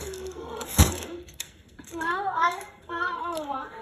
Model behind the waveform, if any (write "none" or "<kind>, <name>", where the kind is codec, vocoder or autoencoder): codec, SNAC